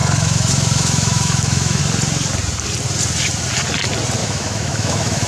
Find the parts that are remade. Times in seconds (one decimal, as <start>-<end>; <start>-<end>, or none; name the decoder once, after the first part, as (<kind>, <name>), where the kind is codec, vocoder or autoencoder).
0.0-1.8 (autoencoder, DAC-VAE); 4.2-5.3